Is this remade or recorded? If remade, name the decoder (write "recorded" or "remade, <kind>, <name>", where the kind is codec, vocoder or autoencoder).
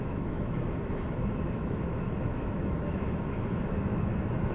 remade, autoencoder, DAC-VAE